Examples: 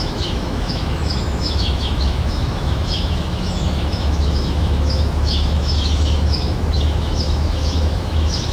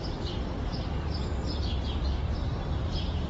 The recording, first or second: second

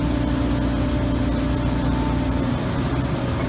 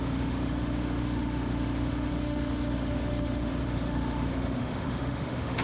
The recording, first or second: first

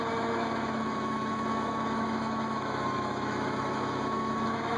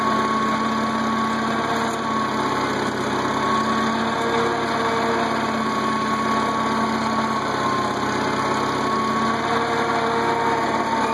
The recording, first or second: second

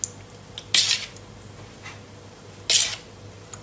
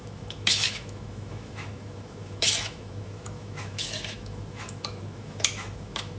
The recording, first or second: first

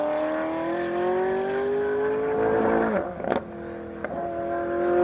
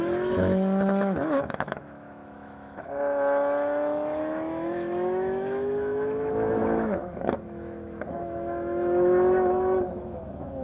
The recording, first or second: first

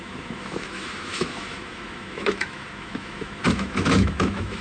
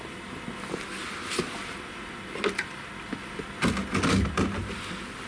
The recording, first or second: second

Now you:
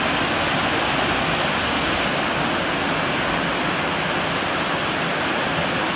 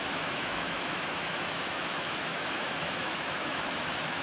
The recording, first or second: first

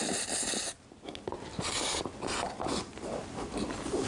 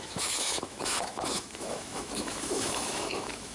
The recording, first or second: first